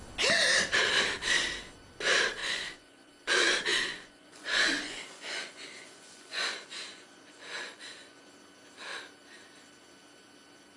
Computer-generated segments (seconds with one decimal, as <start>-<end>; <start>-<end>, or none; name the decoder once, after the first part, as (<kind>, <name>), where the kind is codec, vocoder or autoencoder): 2.4-3.1 (vocoder, Vocos); 3.7-8.3